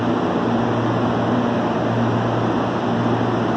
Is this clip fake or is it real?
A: real